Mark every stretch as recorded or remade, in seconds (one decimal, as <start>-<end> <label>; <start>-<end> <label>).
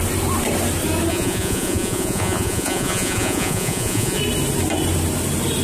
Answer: 0.0-1.1 recorded; 1.1-4.2 remade; 4.2-5.6 recorded